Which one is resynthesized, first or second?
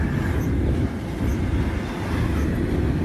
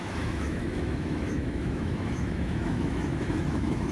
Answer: second